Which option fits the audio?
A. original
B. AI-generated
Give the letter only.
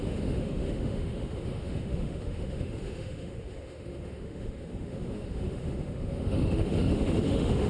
B